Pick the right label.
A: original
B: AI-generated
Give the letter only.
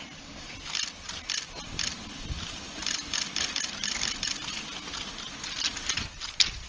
A